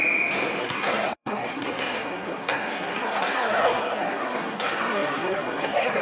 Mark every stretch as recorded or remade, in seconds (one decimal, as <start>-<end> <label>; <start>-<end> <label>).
0.0-0.6 recorded; 0.6-6.0 remade